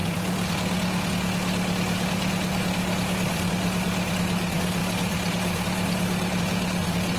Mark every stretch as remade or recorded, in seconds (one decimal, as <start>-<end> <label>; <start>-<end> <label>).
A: 0.0-7.2 recorded

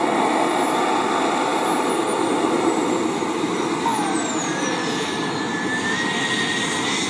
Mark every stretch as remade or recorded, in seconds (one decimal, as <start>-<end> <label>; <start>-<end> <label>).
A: 0.0-3.9 recorded; 3.9-5.6 remade; 5.6-7.1 recorded

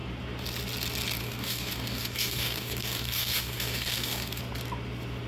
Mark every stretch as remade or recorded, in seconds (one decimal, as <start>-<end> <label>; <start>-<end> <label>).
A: 0.0-1.2 recorded; 1.2-4.4 remade; 4.4-5.3 recorded

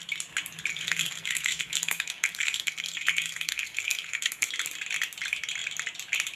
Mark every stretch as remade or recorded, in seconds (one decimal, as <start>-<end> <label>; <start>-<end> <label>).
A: 0.0-0.7 recorded; 0.7-4.5 remade; 4.5-6.4 recorded